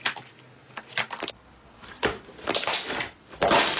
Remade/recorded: recorded